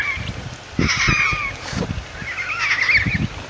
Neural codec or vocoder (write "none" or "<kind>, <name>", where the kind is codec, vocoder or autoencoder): none